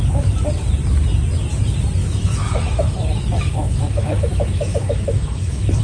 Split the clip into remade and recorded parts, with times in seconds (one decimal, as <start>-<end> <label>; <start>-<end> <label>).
0.0-2.0 recorded; 2.0-5.8 remade